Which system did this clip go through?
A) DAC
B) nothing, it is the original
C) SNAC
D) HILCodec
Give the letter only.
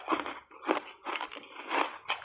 B